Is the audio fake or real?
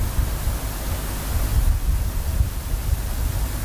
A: real